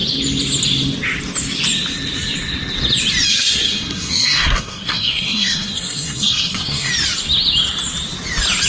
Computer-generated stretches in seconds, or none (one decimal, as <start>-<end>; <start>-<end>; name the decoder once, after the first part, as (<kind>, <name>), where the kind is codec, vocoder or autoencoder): 3.3-6.9 (codec, SNAC)